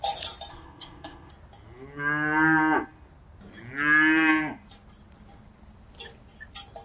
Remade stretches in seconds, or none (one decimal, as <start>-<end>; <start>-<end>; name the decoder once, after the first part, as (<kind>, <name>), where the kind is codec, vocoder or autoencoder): 0.5-1.3 (codec, ZipCodec)